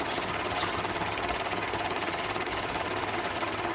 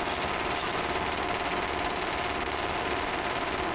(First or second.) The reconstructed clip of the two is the first